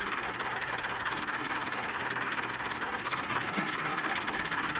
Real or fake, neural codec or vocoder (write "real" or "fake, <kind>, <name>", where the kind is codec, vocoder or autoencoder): fake, codec, SNAC